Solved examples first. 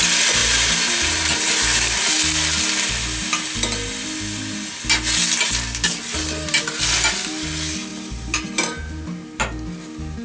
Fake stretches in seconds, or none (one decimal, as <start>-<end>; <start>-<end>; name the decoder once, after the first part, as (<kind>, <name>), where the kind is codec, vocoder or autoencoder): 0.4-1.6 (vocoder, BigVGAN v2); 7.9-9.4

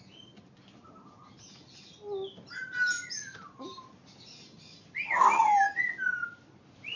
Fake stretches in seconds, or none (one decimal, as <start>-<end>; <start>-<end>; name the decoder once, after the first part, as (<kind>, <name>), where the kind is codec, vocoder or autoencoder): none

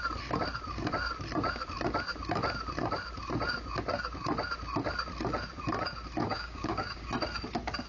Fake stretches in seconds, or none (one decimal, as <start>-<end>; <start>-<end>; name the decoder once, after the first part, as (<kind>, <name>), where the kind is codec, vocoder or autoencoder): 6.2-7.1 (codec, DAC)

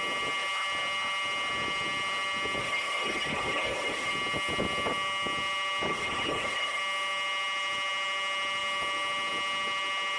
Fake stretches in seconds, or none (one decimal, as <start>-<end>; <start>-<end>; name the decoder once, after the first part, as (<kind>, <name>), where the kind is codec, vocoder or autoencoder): 2.6-4.1 (codec, HILCodec); 5.9-6.8